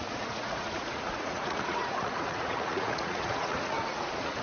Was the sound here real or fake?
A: fake